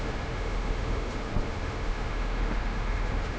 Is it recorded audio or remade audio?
remade